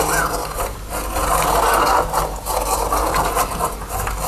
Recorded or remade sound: recorded